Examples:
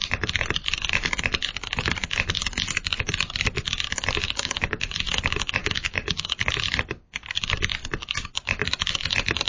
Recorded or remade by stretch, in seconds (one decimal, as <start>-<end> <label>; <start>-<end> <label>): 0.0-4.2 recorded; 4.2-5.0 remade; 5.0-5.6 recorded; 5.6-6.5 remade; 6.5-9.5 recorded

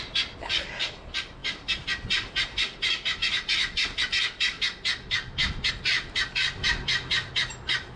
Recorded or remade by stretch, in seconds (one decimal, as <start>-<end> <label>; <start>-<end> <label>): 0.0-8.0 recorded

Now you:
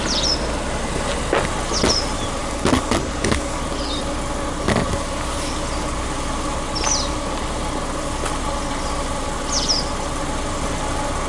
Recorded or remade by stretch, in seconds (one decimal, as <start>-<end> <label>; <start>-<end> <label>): 0.0-2.4 recorded; 2.4-3.6 remade; 3.6-11.3 recorded

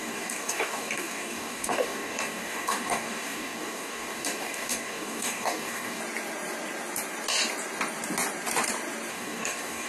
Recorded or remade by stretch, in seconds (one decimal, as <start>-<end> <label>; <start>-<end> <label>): 0.0-6.0 remade; 6.0-9.1 recorded; 9.1-9.9 remade

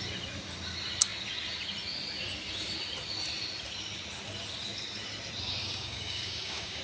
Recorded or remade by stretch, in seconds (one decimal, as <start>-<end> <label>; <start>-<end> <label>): 0.0-5.6 recorded; 5.6-6.8 remade

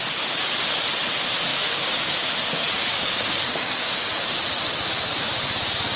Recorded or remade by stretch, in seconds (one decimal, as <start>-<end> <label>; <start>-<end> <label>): 0.0-1.5 recorded; 1.5-4.4 remade; 4.4-6.0 recorded

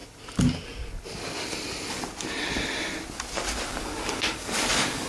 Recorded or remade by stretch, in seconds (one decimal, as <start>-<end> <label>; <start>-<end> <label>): 0.0-3.7 recorded; 3.7-5.1 remade